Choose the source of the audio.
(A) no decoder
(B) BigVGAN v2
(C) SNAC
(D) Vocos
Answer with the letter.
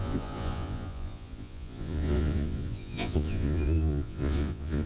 D